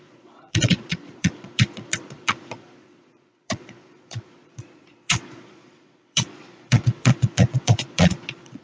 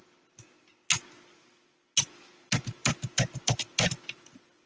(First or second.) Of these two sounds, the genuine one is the second